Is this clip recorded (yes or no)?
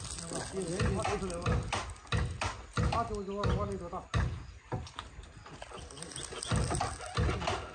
yes